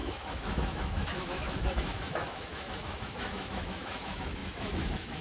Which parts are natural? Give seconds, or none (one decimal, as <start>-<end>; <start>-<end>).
none